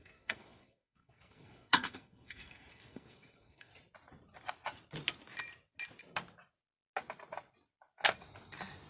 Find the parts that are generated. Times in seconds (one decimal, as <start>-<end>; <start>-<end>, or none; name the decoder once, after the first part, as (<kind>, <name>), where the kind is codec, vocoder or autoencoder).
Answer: 0.0-3.7 (codec, SNAC)